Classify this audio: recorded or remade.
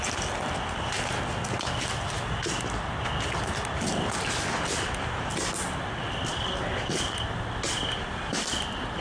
recorded